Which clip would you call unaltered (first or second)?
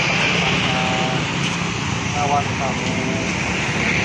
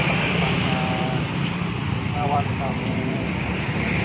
first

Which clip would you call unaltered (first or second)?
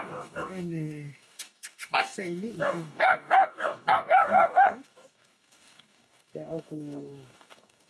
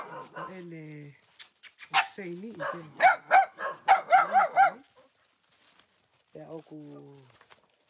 second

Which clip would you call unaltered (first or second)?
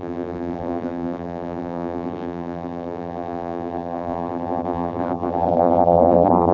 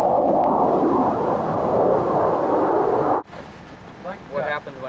second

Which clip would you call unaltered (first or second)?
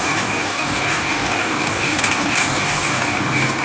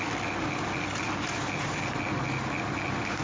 second